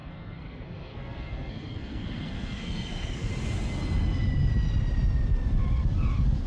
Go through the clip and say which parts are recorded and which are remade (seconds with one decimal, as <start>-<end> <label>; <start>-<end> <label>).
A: 0.0-3.3 remade; 3.3-6.5 recorded